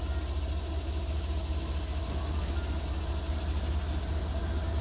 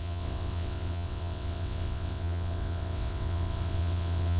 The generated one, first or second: second